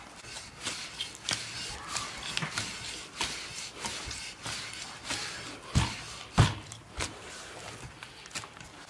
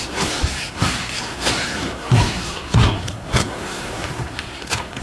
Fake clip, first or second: second